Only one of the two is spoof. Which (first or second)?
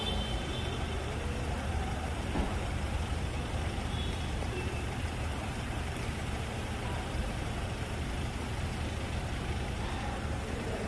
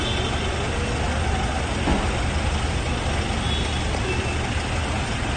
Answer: first